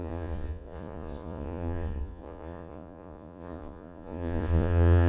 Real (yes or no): no